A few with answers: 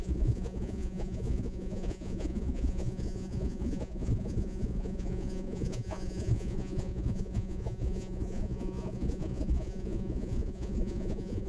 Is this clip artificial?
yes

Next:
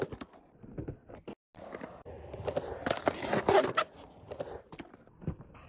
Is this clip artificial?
no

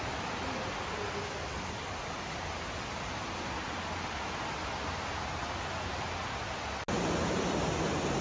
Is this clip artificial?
no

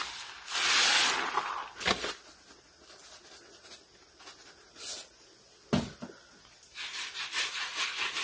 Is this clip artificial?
no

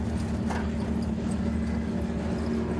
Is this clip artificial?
no